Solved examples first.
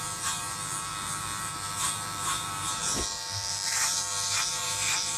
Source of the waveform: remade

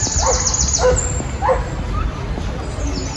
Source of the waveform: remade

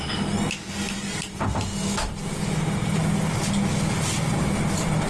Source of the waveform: recorded